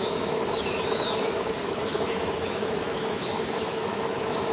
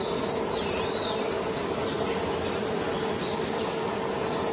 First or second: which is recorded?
second